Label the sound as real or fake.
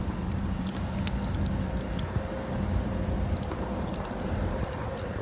real